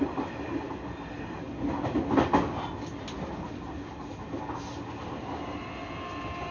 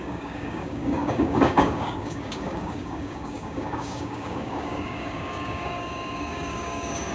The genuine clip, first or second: first